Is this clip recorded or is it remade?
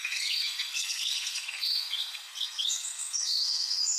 remade